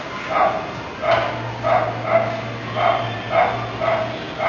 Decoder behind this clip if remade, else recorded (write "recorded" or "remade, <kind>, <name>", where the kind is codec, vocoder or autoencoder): recorded